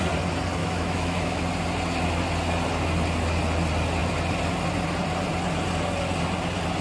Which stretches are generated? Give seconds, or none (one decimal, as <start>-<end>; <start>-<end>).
0.6-1.4